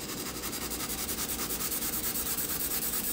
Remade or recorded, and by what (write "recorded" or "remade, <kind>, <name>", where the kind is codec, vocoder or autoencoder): remade, vocoder, BigVGAN v2